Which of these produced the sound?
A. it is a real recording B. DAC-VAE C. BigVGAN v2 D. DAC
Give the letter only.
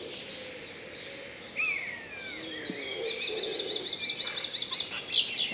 A